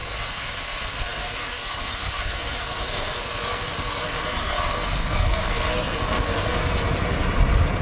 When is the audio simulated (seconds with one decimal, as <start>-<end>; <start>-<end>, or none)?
0.0-6.6